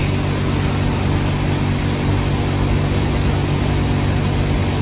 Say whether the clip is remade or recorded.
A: recorded